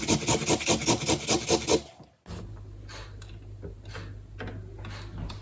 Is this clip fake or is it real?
real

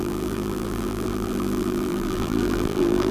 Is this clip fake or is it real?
fake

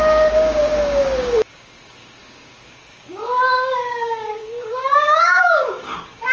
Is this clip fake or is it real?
fake